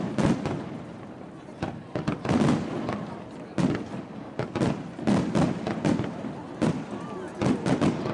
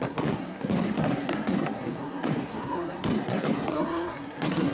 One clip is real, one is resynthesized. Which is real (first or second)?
first